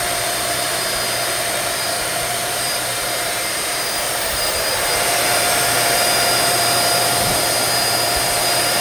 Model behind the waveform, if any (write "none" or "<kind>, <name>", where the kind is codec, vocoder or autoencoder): vocoder, BigVGAN v2